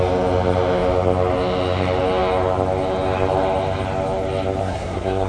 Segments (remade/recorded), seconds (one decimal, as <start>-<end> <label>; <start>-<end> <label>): 0.0-4.6 recorded; 4.6-5.3 remade